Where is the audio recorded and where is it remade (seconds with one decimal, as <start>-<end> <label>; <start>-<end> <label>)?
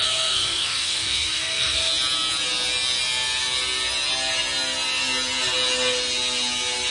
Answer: 0.0-1.9 remade; 1.9-6.9 recorded